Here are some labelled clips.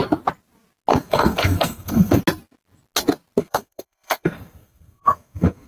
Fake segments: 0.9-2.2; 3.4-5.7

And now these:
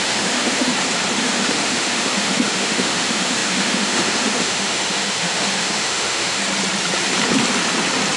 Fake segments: 0.0-0.7; 1.2-6.4

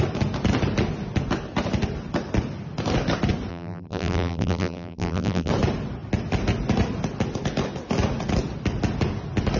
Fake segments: 3.5-5.5

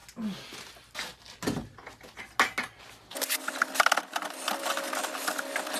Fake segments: none